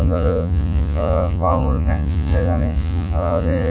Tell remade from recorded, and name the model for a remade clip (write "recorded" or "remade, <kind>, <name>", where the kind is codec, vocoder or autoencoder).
remade, vocoder, Vocos